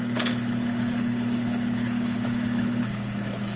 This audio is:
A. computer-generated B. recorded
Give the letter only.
A